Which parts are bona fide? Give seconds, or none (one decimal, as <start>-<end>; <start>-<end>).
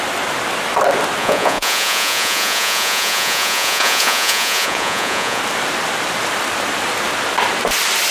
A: 0.0-1.2; 5.4-8.1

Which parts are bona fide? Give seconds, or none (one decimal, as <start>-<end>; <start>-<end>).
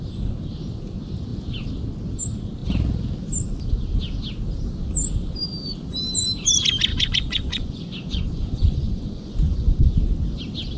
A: 0.0-6.9; 9.9-10.8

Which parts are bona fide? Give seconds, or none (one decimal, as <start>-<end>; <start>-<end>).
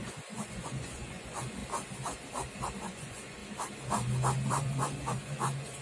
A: 1.6-2.8; 3.4-4.5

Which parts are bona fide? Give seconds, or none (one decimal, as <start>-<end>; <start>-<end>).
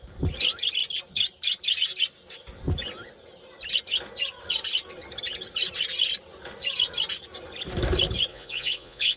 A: 0.0-8.3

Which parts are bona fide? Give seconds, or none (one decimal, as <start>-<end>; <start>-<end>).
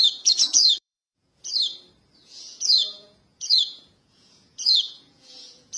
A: 1.5-2.2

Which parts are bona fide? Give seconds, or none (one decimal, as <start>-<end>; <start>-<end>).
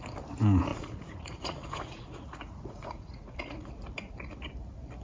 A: 0.0-0.7; 3.7-5.0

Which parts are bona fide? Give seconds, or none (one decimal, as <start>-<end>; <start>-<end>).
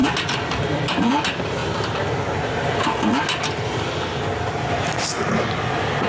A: 0.0-6.1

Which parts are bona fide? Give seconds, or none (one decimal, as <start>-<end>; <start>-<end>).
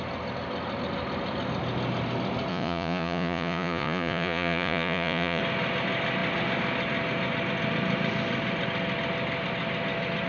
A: 0.0-2.5; 5.4-10.3